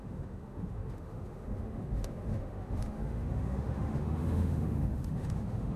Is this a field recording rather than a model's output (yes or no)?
no